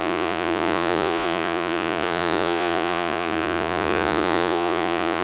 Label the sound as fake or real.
fake